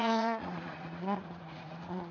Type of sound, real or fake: fake